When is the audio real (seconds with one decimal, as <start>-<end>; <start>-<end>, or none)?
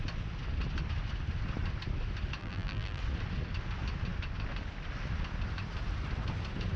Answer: 0.0-2.4; 3.0-6.8